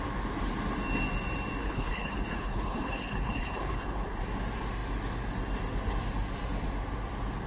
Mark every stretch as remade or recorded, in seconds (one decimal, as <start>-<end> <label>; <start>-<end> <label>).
0.0-1.6 recorded; 1.6-4.2 remade; 4.2-7.5 recorded